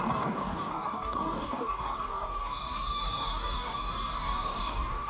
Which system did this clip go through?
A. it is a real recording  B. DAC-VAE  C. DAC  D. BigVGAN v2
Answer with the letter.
C